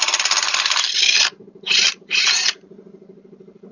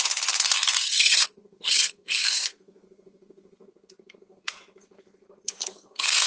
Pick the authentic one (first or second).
first